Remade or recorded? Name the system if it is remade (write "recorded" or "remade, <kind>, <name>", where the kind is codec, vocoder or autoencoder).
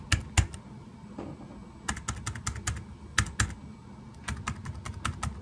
recorded